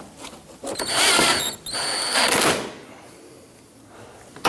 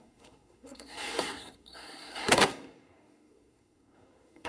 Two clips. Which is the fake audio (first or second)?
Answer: second